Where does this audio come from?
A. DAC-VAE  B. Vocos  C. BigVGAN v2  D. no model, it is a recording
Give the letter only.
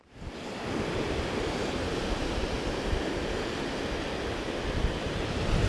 D